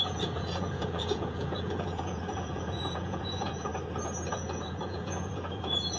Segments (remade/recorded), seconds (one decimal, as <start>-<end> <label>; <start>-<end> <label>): 0.0-3.7 remade; 3.7-4.3 recorded; 4.3-6.0 remade